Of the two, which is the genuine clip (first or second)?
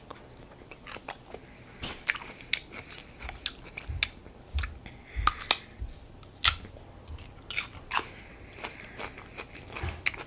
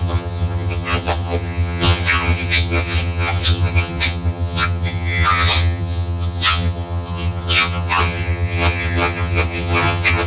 first